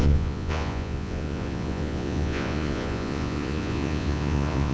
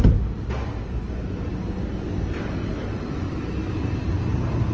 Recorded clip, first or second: second